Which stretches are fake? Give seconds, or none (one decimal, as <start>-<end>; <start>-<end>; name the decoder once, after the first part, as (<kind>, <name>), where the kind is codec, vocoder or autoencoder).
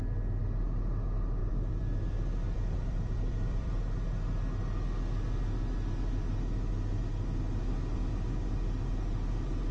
1.4-3.7 (vocoder, BigVGAN v2)